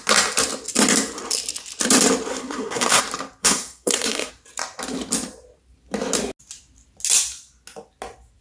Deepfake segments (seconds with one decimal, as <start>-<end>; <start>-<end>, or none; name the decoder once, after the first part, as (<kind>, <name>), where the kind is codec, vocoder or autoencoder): 2.3-3.0 (codec, SNAC); 3.4-4.3